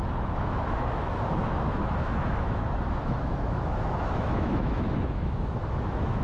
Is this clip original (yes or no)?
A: no